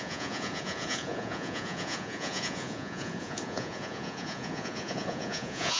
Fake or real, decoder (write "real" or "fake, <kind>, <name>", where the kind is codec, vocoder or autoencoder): fake, vocoder, Vocos